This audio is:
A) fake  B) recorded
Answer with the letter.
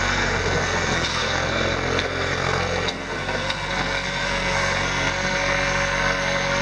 A